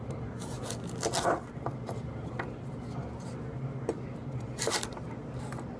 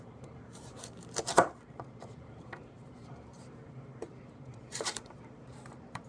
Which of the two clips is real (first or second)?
first